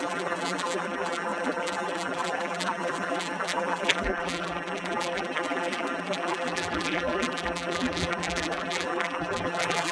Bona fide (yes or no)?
no